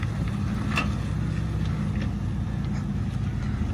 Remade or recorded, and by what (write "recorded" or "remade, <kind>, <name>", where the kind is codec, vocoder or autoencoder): recorded